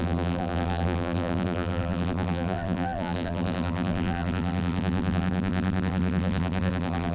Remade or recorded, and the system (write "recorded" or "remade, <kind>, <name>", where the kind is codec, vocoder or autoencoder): remade, vocoder, BigVGAN v2